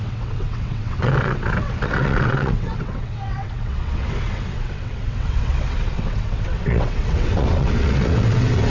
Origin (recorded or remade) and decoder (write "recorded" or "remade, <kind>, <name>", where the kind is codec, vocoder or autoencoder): remade, vocoder, WaveNeXt